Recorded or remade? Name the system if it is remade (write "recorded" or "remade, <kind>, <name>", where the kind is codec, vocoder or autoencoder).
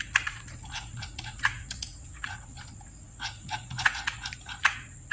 remade, vocoder, Vocos